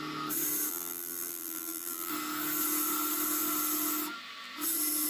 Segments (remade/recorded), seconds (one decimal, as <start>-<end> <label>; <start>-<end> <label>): 0.0-0.7 recorded; 0.7-2.1 remade; 2.1-5.1 recorded